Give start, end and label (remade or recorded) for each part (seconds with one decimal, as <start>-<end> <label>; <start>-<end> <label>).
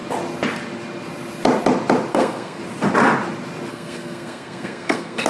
0.0-2.1 recorded; 2.1-2.6 remade; 2.6-3.7 recorded; 3.7-5.3 remade